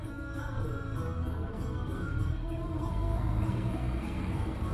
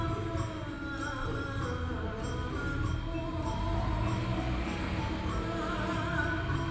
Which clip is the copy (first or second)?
first